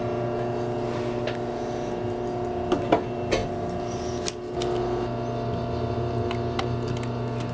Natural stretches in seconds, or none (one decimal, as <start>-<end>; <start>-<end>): 0.0-7.5

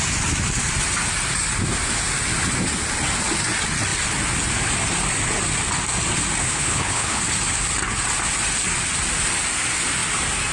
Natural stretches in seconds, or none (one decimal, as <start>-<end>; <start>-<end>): 0.0-6.4; 7.2-10.5